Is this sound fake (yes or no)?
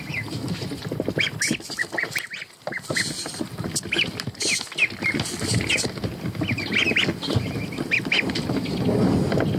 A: no